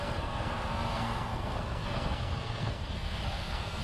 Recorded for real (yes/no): no